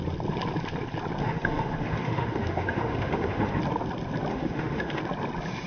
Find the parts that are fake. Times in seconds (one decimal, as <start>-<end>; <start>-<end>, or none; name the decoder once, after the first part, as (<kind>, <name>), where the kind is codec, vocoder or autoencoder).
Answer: 1.2-3.6 (autoencoder, DAC-VAE); 4.3-5.0